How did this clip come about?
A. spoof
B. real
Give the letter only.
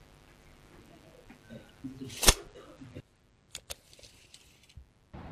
B